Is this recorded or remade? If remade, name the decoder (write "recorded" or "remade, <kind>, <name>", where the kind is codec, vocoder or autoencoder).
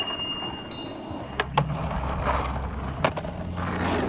recorded